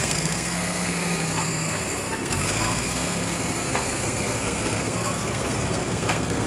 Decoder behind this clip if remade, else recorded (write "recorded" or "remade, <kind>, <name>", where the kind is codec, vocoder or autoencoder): remade, codec, SNAC